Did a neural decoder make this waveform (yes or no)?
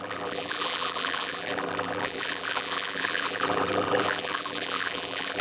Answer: yes